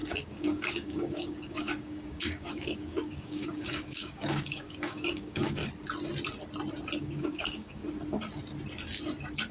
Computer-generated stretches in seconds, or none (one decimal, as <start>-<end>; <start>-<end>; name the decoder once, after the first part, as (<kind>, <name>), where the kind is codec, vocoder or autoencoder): 0.0-5.6 (codec, DAC); 7.0-7.8